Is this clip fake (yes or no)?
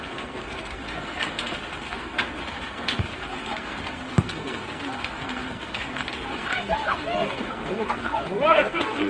yes